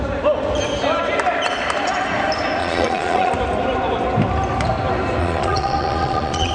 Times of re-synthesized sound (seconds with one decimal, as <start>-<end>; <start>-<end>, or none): 2.6-3.3; 5.2-6.5